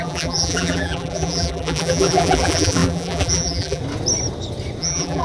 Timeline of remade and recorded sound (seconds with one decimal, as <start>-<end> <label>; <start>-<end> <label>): 0.0-3.8 remade; 3.8-4.8 recorded; 4.8-5.2 remade